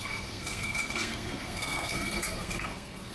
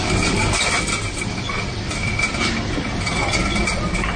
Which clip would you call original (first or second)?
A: second